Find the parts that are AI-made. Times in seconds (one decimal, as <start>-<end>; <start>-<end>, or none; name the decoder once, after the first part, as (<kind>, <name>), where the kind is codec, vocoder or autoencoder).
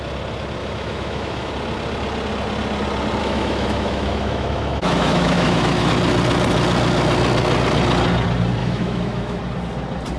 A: 0.6-1.5 (autoencoder, DAC-VAE); 3.2-5.9; 8.6-9.4